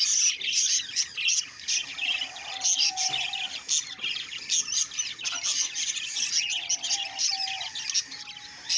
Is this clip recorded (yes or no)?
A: yes